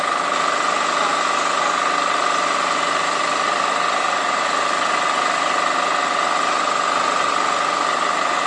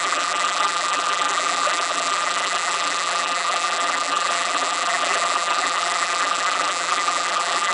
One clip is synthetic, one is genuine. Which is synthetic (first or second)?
second